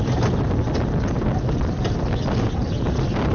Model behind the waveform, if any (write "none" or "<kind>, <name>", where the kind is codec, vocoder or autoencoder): none